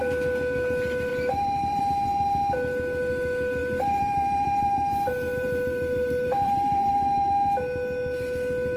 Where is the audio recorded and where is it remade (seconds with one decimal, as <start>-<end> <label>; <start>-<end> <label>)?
0.0-1.1 recorded; 1.1-1.8 remade; 1.8-3.6 recorded; 3.6-7.3 remade; 7.3-8.8 recorded